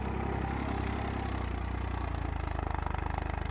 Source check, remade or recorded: recorded